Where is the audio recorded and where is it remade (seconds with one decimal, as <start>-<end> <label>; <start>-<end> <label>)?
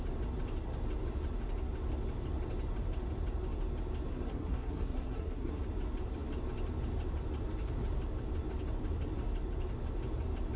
0.0-4.1 recorded; 4.1-5.6 remade; 5.6-10.6 recorded